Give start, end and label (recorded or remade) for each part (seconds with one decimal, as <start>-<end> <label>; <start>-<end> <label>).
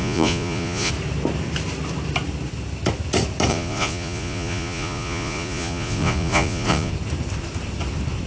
0.0-0.9 remade; 0.9-3.5 recorded; 3.5-6.9 remade; 6.9-8.3 recorded